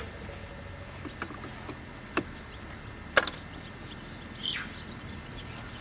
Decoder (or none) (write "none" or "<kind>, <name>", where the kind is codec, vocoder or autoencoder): none